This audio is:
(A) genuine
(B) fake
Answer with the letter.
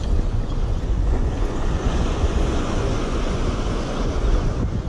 B